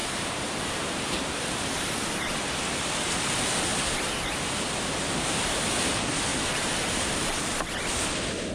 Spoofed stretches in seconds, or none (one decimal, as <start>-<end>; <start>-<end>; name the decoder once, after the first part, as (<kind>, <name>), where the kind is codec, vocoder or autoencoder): 0.0-1.6 (vocoder, BigVGAN v2); 6.3-7.4